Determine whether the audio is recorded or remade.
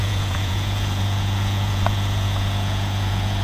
remade